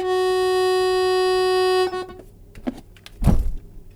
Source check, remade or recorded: recorded